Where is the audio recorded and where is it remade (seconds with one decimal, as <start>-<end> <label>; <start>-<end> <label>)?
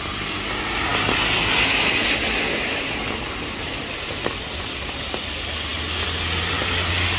0.0-7.2 recorded